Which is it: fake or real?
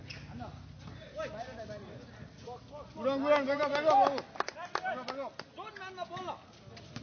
real